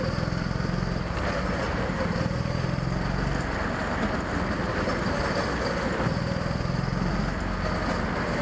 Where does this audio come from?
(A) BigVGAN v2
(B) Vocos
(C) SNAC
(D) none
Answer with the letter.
D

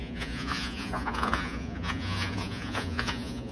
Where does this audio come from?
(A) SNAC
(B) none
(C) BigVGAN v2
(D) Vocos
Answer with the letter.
D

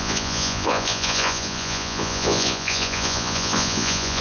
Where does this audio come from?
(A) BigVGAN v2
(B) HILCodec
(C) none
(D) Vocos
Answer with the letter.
D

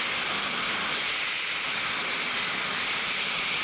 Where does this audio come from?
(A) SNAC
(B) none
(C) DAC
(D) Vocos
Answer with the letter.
B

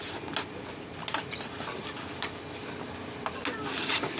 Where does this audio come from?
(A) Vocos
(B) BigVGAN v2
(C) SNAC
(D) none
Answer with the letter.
D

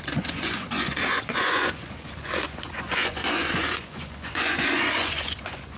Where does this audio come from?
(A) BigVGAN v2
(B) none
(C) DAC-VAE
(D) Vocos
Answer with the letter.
D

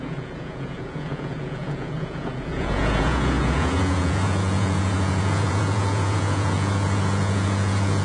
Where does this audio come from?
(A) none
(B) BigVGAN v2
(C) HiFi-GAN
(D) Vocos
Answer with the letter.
D